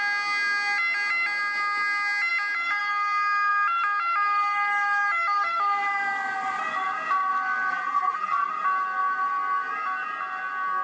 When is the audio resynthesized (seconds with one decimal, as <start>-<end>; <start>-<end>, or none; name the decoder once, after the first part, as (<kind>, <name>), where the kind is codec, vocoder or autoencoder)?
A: 7.7-8.5 (vocoder, BigVGAN v2)